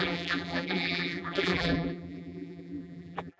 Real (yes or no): no